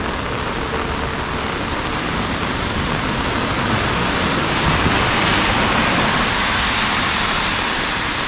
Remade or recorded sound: recorded